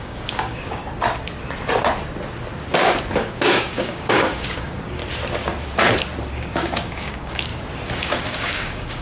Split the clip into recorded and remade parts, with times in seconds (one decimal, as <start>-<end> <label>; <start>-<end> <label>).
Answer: 0.0-0.8 remade; 0.8-3.1 recorded; 3.1-5.0 remade; 5.0-6.3 recorded; 6.3-7.5 remade; 7.5-8.0 recorded; 8.0-9.0 remade